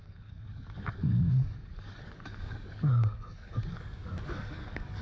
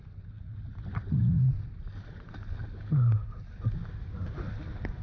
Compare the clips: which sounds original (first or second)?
second